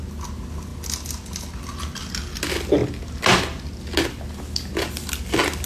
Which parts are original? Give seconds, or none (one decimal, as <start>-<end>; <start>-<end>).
0.0-5.7